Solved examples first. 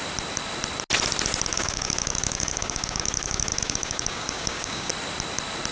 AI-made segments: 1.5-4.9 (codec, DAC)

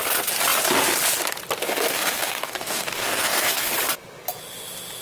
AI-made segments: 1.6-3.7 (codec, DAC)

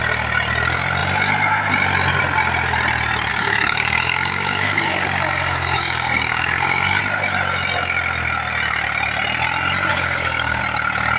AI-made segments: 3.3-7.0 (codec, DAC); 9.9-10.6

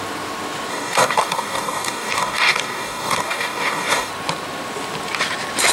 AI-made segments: 0.7-4.1 (codec, DAC)